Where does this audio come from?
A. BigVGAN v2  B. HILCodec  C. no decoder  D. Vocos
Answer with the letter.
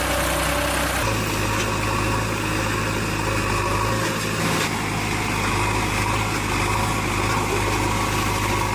C